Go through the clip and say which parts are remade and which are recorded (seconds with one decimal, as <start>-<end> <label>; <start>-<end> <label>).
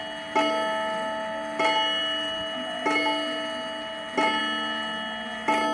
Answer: 0.0-5.7 recorded